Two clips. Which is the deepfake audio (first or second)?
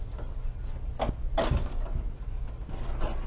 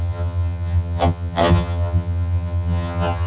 second